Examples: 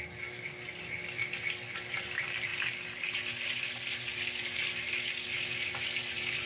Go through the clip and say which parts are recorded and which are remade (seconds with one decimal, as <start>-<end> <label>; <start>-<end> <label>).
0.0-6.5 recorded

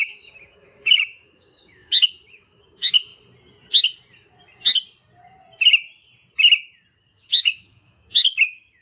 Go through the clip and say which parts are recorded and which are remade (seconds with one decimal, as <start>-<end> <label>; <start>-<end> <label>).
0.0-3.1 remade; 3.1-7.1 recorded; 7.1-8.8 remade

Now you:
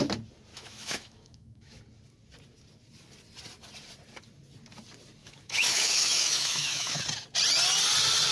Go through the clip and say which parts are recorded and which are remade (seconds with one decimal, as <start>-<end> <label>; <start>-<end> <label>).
0.0-0.5 recorded; 0.5-1.8 remade; 1.8-5.2 recorded; 5.2-7.0 remade; 7.0-8.3 recorded

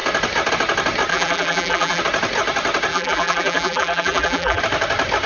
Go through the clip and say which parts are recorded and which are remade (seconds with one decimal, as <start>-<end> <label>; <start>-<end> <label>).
0.0-1.1 recorded; 1.1-2.0 remade; 2.0-2.9 recorded; 2.9-4.6 remade; 4.6-5.3 recorded

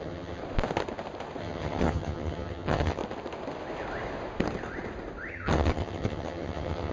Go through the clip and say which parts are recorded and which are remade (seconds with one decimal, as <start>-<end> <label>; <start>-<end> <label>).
0.0-0.4 remade; 0.4-1.4 recorded; 1.4-3.0 remade; 3.0-5.3 recorded; 5.3-6.9 remade